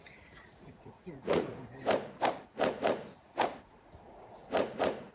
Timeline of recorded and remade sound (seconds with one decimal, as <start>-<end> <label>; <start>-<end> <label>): 0.0-1.5 remade; 1.5-2.4 recorded; 2.4-5.1 remade